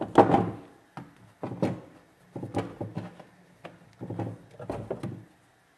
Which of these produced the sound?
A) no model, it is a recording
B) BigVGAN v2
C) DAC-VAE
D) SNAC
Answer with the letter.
A